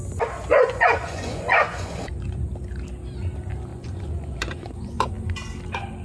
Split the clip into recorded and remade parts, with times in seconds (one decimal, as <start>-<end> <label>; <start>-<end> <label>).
0.0-0.5 recorded; 0.5-2.5 remade; 2.5-3.7 recorded; 3.7-5.1 remade; 5.1-6.0 recorded